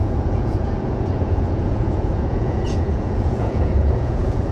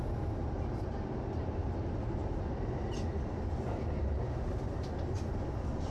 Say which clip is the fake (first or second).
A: first